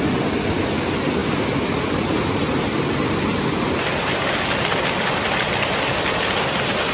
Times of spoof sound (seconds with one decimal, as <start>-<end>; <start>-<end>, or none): none